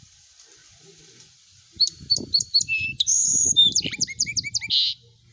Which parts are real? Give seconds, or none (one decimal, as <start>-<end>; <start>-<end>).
4.3-5.3